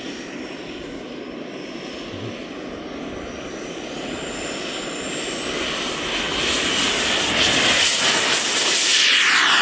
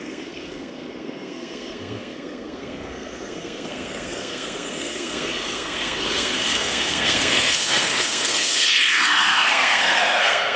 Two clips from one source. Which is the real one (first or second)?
first